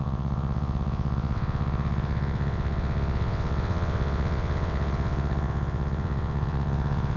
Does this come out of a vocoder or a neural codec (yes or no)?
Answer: yes